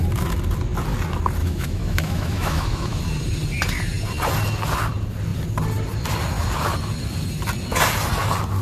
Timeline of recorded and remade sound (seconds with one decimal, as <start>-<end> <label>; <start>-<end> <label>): 0.0-1.4 recorded; 1.4-3.0 remade; 3.0-8.6 recorded